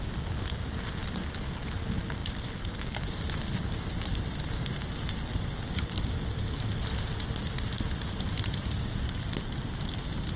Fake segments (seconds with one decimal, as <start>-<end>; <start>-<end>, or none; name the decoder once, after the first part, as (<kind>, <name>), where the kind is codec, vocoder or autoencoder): 2.2-6.0 (vocoder, BigVGAN v2)